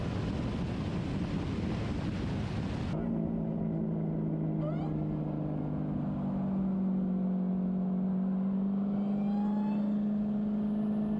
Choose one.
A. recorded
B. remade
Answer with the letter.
A